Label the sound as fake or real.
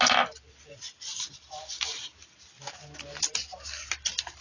real